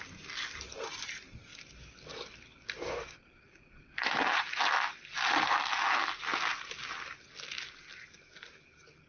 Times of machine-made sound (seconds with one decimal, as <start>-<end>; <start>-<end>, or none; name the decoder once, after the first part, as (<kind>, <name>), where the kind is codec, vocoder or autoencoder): 1.5-5.8 (vocoder, BigVGAN v2)